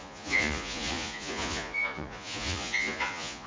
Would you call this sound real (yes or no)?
no